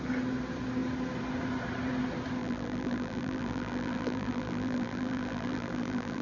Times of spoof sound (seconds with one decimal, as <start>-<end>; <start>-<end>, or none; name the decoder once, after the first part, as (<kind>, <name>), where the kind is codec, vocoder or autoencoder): 2.4-6.2 (vocoder, BigVGAN v2)